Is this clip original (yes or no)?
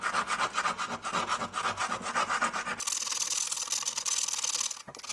yes